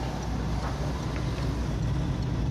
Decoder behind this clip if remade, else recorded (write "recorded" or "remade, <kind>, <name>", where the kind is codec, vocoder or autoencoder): recorded